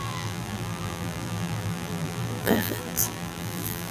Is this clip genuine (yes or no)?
no